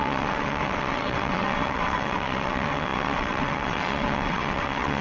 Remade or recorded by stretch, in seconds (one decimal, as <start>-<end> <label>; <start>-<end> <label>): 0.0-5.0 remade